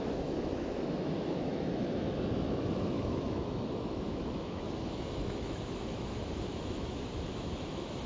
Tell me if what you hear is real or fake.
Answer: fake